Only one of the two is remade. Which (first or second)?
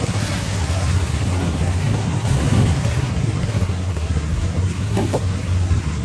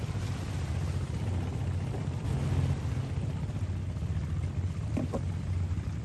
first